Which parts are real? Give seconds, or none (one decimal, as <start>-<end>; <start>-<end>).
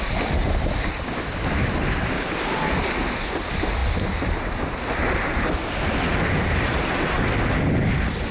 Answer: 0.0-8.3